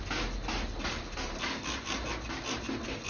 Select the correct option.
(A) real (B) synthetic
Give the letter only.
A